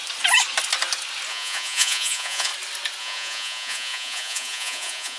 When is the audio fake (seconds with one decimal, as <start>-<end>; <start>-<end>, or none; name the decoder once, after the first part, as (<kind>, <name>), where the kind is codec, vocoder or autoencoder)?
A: 1.3-2.5 (vocoder, Vocos); 3.0-5.2